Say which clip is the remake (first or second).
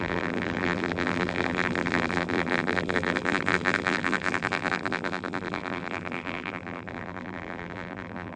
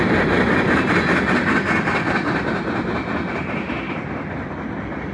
first